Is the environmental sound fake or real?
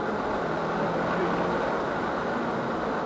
real